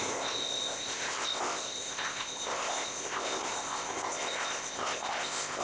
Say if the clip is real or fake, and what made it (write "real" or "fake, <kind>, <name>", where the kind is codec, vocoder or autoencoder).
fake, codec, ZipCodec